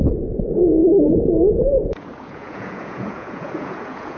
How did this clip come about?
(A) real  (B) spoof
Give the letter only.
B